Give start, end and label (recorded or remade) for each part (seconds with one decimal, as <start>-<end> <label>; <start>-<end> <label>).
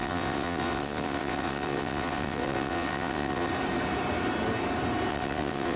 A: 0.0-3.5 remade; 3.5-5.1 recorded; 5.1-5.8 remade